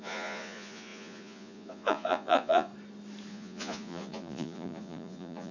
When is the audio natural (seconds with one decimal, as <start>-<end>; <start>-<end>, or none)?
2.7-3.3